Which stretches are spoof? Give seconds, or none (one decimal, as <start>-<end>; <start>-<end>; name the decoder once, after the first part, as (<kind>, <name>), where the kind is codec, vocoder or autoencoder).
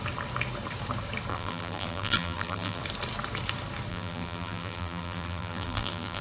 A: 1.3-2.8 (vocoder, BigVGAN v2); 3.9-6.2